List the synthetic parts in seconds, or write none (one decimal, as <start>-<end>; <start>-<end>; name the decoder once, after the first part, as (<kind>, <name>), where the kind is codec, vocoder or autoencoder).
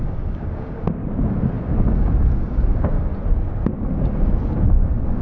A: 0.0-1.0 (codec, DAC); 1.6-3.1; 4.7-5.2